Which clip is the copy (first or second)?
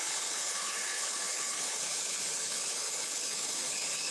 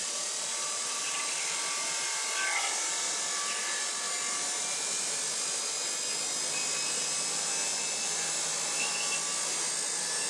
first